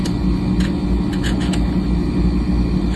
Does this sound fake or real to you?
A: real